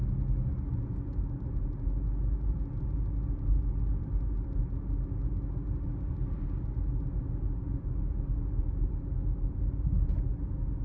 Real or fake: real